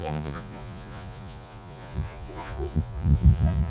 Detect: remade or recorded remade